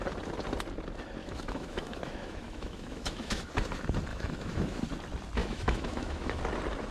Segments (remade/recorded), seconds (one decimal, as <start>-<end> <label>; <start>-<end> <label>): 0.0-1.2 recorded; 1.2-3.5 remade; 3.5-4.1 recorded; 4.1-4.8 remade; 4.8-5.4 recorded; 5.4-6.4 remade; 6.4-6.9 recorded